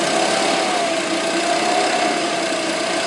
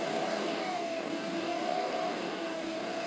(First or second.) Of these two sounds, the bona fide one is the first